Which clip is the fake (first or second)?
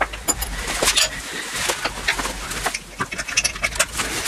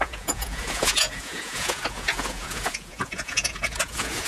second